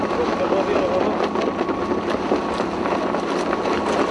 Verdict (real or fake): real